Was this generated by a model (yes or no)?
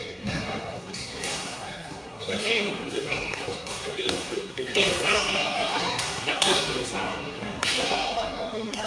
yes